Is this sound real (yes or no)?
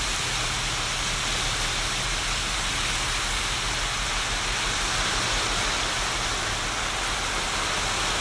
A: yes